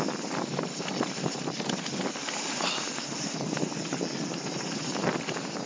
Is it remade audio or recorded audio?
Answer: recorded